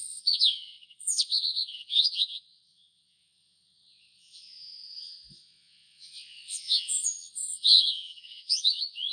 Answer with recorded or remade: remade